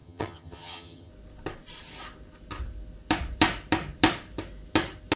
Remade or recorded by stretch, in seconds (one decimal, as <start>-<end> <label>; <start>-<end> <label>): 0.0-1.1 remade; 1.1-5.2 recorded